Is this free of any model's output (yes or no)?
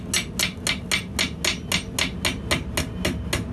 yes